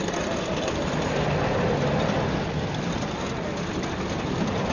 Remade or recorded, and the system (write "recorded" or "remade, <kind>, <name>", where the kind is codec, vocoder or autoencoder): recorded